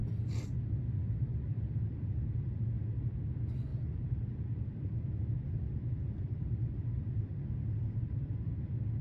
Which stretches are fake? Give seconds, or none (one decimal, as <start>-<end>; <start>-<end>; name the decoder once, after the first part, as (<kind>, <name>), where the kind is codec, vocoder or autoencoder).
0.0-2.6 (vocoder, BigVGAN v2); 3.7-8.2